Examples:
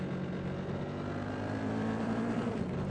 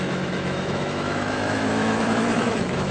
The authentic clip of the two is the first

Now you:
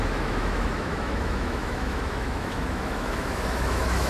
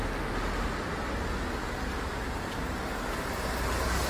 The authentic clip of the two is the second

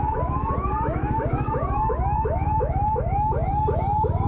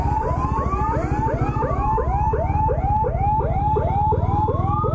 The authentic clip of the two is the second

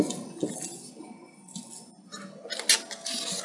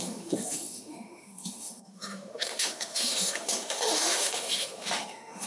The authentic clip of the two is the first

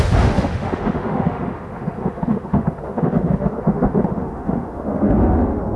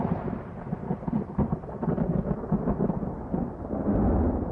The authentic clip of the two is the second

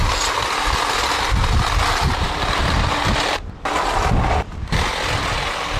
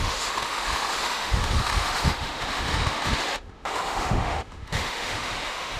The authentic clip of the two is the first